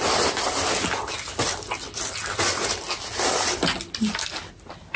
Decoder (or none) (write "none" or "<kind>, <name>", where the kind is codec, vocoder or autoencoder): none